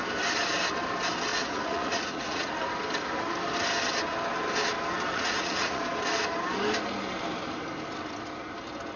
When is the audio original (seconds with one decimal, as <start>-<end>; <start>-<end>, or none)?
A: 0.0-1.3; 2.5-5.1; 5.8-9.0